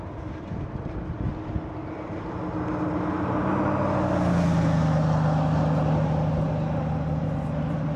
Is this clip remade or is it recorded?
recorded